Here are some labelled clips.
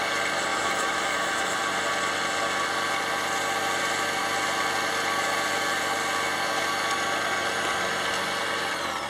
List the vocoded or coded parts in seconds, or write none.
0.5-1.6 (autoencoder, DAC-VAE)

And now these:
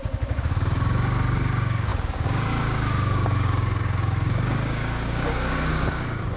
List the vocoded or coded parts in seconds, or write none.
0.0-6.4 (codec, DAC)

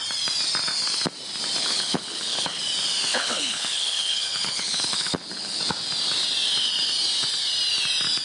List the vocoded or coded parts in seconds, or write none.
1.6-2.6 (codec, HILCodec); 3.1-5.6

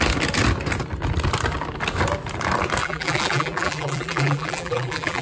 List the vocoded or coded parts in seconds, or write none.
2.8-5.2 (vocoder, BigVGAN v2)

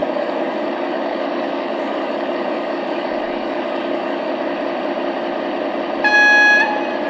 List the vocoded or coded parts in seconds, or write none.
0.0-4.3 (codec, DAC)

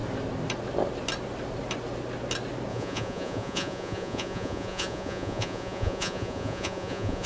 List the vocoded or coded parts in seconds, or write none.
2.7-7.3 (vocoder, Vocos)